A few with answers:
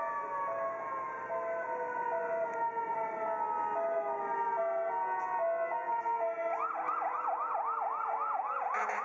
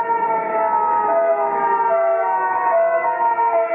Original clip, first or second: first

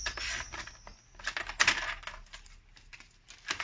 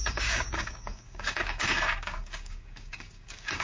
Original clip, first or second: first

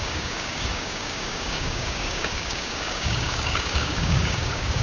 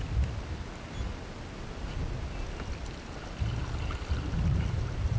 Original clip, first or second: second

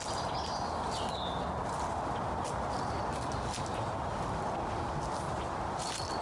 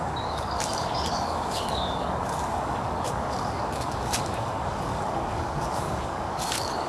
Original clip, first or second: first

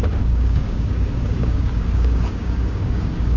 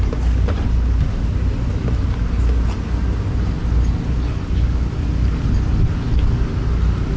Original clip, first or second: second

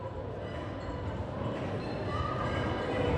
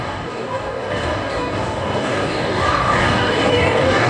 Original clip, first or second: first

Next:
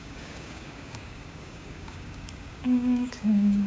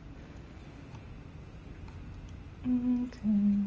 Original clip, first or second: second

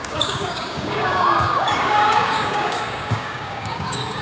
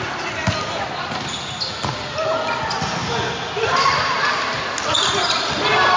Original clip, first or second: second